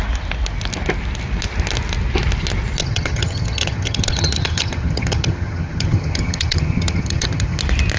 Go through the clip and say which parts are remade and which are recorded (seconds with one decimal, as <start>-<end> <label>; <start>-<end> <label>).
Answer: 0.0-2.8 recorded; 2.8-7.6 remade; 7.6-8.0 recorded